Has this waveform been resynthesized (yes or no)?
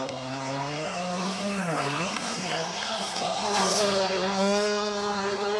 yes